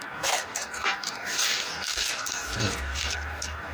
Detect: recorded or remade remade